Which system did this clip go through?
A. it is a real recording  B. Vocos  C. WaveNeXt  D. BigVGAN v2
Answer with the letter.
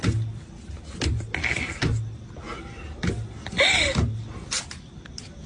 A